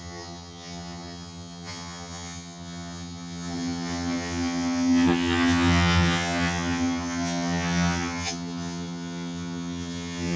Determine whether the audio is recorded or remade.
remade